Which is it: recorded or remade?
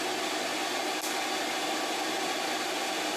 recorded